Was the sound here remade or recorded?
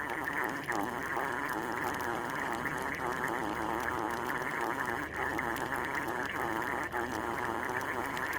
remade